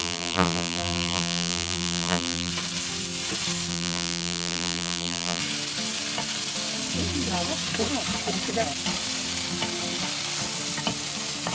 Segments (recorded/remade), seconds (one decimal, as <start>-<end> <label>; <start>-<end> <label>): 0.0-2.5 remade; 2.5-3.7 recorded; 3.7-5.4 remade; 5.4-11.5 recorded